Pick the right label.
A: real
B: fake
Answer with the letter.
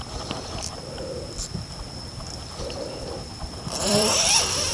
B